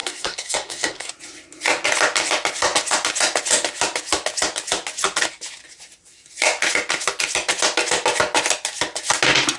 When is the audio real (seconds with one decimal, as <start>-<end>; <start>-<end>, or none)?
1.1-9.6